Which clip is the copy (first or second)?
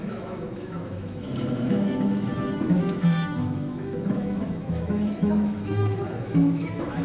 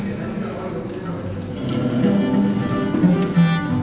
first